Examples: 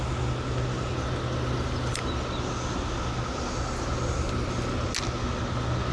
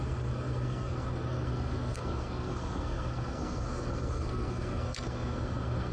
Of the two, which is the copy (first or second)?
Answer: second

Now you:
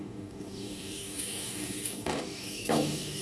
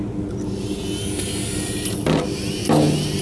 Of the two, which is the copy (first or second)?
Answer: first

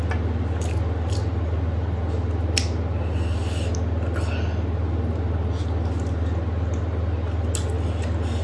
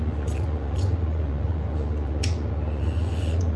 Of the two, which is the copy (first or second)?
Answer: second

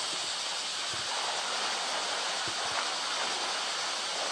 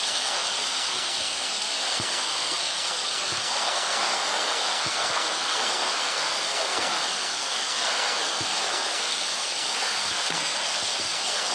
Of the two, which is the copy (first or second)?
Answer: second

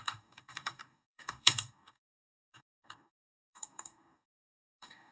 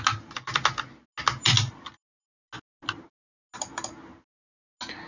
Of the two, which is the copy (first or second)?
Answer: first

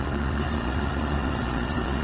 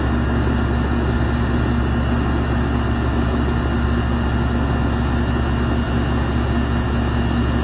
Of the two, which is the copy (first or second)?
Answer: first